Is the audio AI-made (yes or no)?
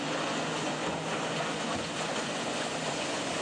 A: yes